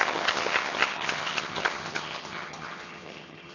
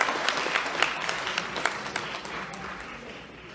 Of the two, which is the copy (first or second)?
first